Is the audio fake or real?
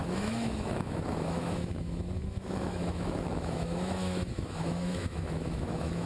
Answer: fake